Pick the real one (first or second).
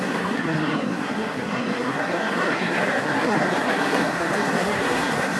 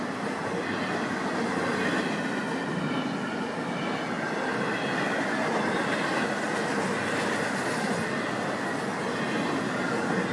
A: second